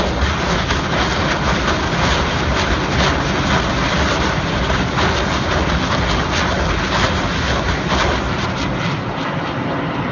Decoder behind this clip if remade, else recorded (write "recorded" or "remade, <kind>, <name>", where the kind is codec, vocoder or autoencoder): recorded